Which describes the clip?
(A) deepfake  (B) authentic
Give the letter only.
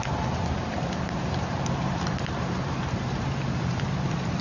A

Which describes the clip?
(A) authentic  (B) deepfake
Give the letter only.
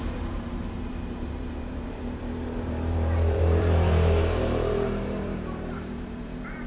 B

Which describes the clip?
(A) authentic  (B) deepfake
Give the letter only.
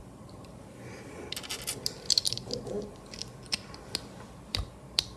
A